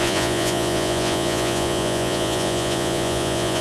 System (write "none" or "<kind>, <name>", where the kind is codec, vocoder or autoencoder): vocoder, Vocos